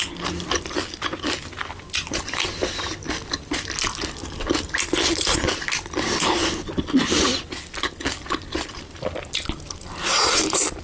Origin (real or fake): real